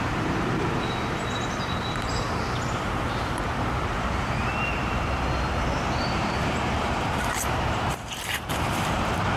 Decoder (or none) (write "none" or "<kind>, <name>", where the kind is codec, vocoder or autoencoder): vocoder, BigVGAN v2